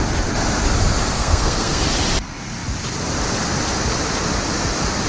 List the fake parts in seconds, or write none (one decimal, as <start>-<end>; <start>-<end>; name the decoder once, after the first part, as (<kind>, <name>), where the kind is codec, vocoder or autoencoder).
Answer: 1.1-1.8 (codec, SNAC)